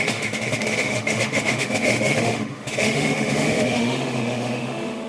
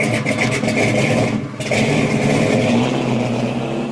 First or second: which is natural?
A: second